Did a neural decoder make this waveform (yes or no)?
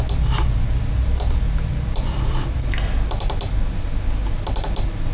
no